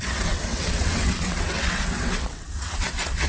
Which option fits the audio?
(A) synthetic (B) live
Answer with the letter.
A